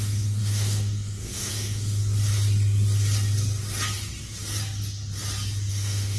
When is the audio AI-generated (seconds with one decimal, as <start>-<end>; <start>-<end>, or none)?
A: 0.0-2.0; 5.7-6.2